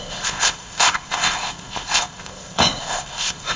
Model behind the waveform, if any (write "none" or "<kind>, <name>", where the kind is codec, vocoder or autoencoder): codec, ZipCodec